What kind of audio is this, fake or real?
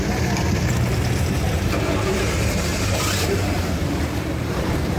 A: fake